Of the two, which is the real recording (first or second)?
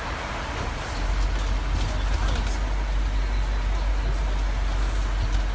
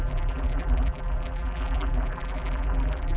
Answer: first